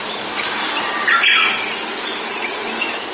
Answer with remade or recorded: recorded